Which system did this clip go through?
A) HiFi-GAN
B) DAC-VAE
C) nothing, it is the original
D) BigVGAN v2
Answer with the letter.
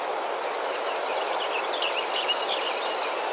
C